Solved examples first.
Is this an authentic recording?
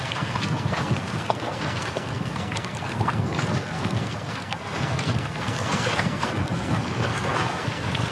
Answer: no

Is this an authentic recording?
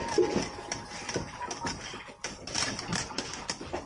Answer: yes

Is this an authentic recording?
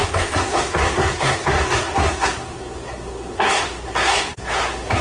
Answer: no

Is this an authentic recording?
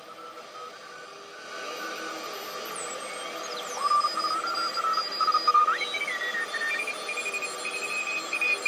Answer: yes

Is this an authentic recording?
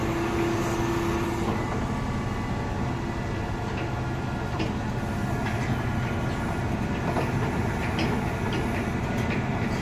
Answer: yes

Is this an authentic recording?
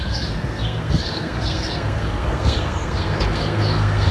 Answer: no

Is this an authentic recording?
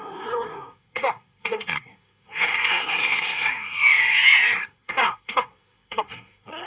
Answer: no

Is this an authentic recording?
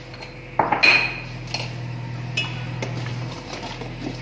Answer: yes